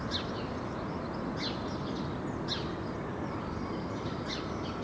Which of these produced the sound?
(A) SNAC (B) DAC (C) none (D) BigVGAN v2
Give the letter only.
C